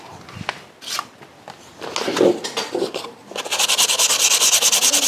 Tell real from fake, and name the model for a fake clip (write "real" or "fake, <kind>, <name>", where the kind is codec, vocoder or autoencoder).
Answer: real